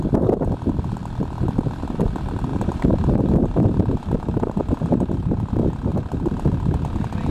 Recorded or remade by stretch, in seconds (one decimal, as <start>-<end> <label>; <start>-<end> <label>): 0.0-2.5 recorded; 2.5-5.5 remade; 5.5-7.3 recorded